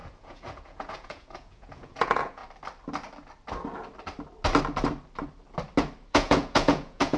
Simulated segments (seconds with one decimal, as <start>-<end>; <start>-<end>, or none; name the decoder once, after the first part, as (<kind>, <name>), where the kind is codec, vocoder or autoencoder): 0.0-2.4 (vocoder, Vocos); 6.1-7.2